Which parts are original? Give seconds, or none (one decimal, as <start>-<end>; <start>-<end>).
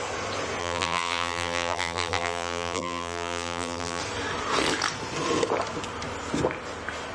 0.0-0.6; 4.0-7.1